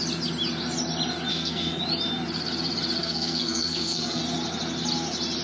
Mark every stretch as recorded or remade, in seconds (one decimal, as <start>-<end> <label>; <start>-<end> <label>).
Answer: 0.0-1.3 recorded; 1.3-1.8 remade; 1.8-3.0 recorded; 3.0-4.2 remade; 4.2-5.4 recorded